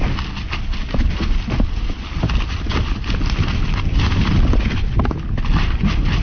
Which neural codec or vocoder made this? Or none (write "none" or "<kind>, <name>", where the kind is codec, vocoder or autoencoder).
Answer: none